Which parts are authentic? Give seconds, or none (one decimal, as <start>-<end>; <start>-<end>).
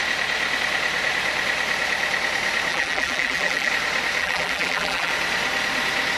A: 0.0-2.7; 3.7-4.2; 5.1-6.2